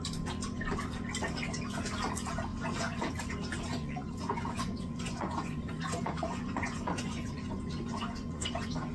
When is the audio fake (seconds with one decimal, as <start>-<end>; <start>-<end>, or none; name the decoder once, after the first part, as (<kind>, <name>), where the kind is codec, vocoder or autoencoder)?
2.5-3.1 (vocoder, Vocos); 3.7-8.9